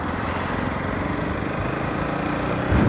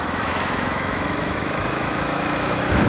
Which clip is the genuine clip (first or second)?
first